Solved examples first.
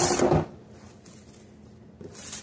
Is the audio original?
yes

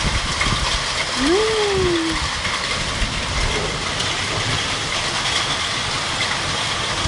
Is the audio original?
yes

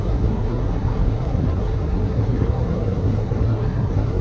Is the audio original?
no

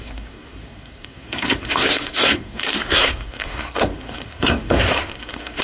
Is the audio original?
no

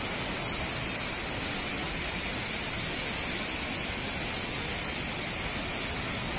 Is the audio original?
yes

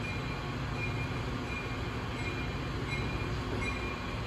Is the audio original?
yes